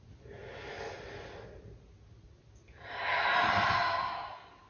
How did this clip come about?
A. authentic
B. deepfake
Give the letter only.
A